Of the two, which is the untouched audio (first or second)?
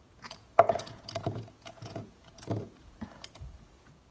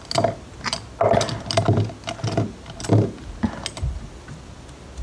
second